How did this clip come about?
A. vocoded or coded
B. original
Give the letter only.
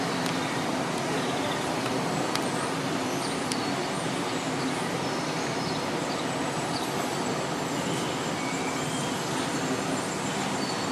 B